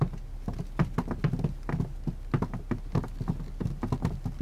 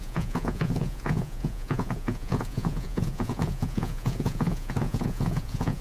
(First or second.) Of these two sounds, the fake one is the second